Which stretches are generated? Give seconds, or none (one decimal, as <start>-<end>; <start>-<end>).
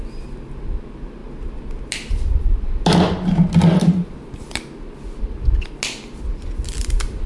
none